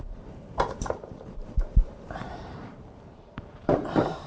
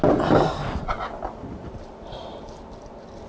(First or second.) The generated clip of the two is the first